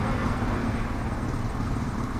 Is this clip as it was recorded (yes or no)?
no